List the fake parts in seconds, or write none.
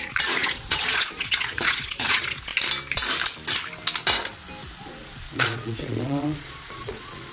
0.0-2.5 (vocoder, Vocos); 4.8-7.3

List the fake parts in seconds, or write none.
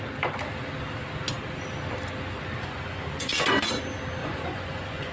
2.6-3.3 (vocoder, Vocos); 4.2-5.1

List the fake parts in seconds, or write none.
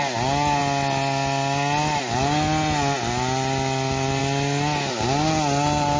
none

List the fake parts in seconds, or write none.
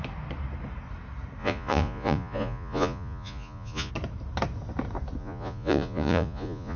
1.4-3.9 (vocoder, Vocos); 5.2-6.8